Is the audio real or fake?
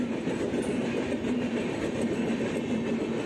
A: real